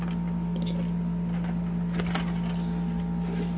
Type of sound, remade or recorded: recorded